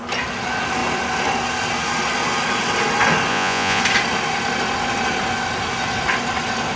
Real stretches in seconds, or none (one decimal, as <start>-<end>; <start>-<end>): 0.0-3.3; 3.8-6.8